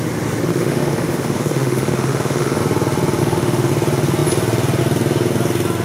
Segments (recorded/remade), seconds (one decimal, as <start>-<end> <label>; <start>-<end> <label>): 0.0-0.5 recorded; 0.5-2.6 remade; 2.6-3.2 recorded; 3.2-3.7 remade; 3.7-5.8 recorded